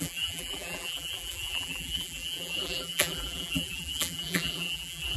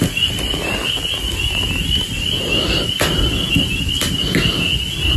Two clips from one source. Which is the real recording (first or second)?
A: second